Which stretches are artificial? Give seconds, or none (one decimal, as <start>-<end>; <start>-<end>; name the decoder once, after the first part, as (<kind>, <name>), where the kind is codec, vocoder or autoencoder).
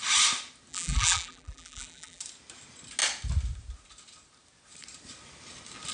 0.7-2.2 (vocoder, BigVGAN v2)